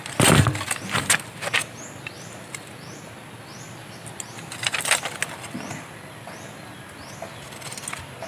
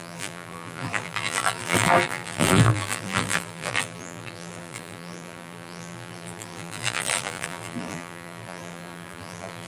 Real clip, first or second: first